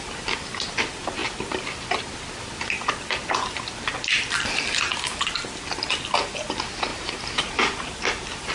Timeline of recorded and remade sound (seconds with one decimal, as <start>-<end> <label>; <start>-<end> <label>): 0.0-6.9 recorded; 6.9-8.5 remade